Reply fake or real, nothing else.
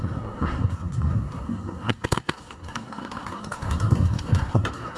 fake